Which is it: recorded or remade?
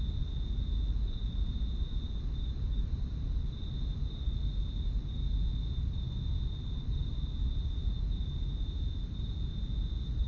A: recorded